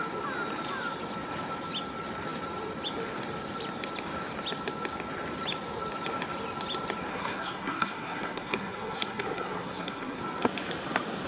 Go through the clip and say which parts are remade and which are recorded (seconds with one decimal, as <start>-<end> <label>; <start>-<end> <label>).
0.0-7.1 recorded; 7.1-10.2 remade; 10.2-11.3 recorded